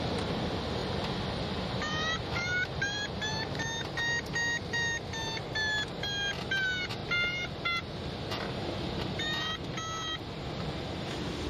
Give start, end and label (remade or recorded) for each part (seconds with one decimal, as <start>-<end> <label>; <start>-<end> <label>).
0.0-0.8 recorded; 0.8-3.4 remade; 3.4-7.0 recorded; 7.0-7.6 remade; 7.6-11.5 recorded